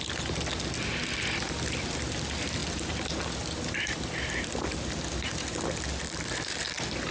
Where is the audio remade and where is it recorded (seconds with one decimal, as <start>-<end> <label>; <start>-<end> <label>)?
0.0-7.1 recorded